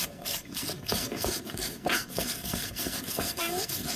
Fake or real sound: fake